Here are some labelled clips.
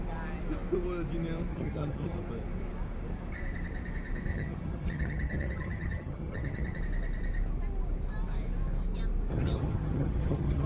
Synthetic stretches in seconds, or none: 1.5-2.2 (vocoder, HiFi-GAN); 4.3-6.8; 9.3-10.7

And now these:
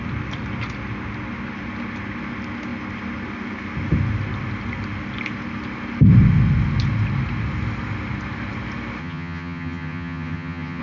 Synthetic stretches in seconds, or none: 9.0-10.8 (vocoder, HiFi-GAN)

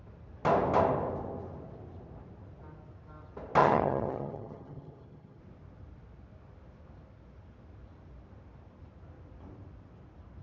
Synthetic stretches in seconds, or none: 3.6-5.4 (vocoder, HiFi-GAN)

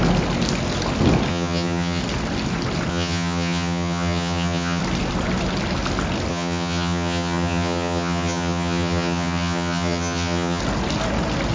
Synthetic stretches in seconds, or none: 1.3-2.0 (vocoder, HiFi-GAN); 2.9-4.8; 6.3-10.6

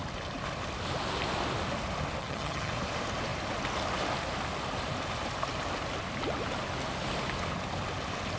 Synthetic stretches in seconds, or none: 2.2-2.7 (vocoder, HiFi-GAN)